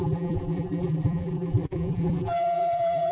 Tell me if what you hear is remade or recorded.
remade